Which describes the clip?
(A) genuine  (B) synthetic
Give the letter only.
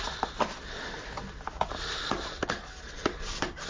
A